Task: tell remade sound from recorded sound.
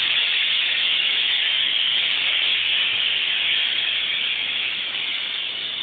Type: remade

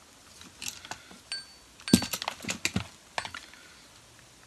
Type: recorded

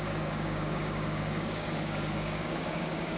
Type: remade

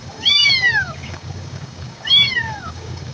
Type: remade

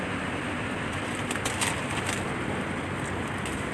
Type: recorded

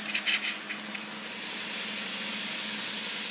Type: recorded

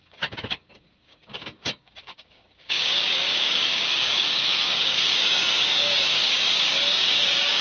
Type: remade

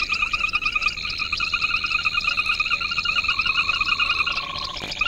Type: recorded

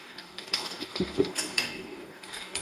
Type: remade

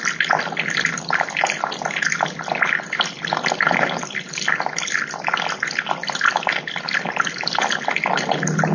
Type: recorded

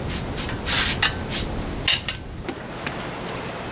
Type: recorded